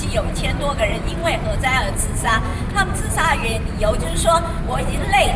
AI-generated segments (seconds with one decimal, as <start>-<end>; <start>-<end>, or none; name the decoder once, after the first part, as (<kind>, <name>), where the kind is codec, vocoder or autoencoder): none